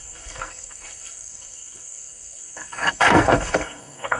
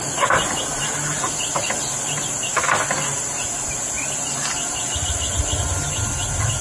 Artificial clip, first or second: first